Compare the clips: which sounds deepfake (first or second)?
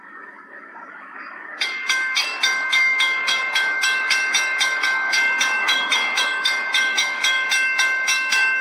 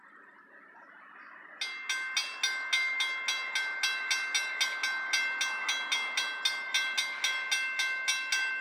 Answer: first